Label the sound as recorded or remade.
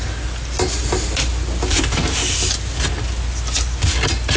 recorded